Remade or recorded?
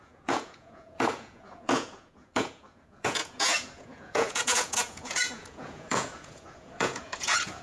remade